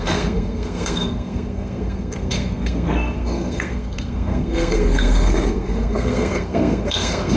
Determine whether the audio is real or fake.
fake